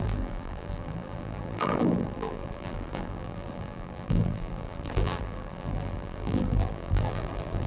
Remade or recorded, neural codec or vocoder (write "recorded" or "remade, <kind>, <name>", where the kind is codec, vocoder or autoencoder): remade, vocoder, BigVGAN v2